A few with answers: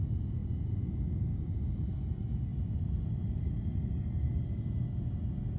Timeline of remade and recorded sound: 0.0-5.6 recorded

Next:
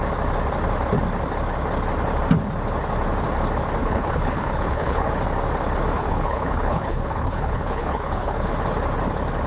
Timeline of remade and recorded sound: 0.0-3.8 recorded; 3.8-5.1 remade; 5.1-5.9 recorded; 5.9-8.5 remade; 8.5-9.5 recorded

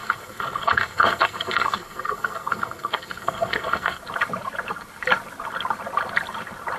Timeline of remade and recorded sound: 0.0-4.0 remade; 4.0-6.8 recorded